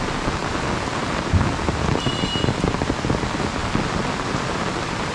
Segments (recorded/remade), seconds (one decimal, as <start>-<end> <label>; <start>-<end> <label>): 0.0-5.1 recorded